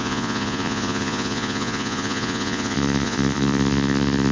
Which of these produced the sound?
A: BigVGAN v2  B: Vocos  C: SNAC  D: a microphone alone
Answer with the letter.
B